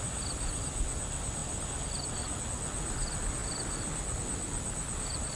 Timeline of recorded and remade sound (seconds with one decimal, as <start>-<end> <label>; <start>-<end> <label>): 0.0-5.4 recorded